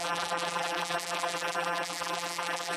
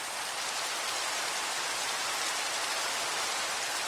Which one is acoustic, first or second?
second